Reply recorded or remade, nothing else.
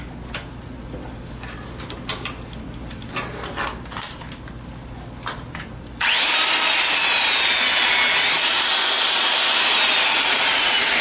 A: recorded